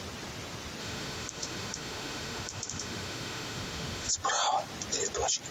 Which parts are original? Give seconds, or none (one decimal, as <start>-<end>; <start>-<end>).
0.0-0.8; 4.1-5.5